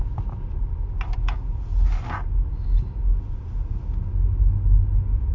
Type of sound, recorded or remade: recorded